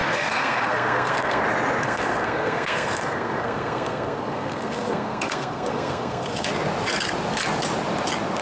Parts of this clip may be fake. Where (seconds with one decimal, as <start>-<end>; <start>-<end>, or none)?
0.0-1.4; 1.8-6.5